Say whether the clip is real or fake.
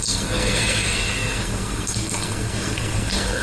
fake